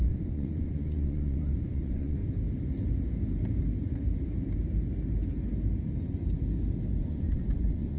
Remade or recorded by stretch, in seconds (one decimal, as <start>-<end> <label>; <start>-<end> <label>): 0.0-2.2 remade; 2.2-7.0 recorded; 7.0-8.0 remade